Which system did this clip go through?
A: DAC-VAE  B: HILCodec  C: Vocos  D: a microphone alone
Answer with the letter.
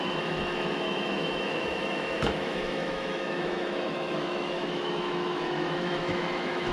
A